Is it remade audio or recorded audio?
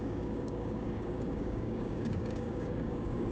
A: remade